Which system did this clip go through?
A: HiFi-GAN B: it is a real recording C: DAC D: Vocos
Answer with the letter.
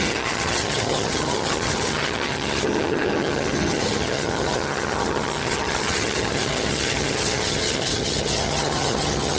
A